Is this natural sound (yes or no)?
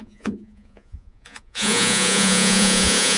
no